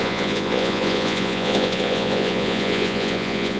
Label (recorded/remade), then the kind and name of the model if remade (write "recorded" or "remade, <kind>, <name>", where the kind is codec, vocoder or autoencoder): remade, vocoder, Vocos